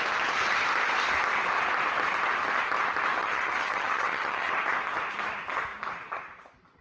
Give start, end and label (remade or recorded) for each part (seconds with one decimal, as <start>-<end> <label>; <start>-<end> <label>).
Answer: 0.0-3.2 recorded; 3.2-4.5 remade; 4.5-6.8 recorded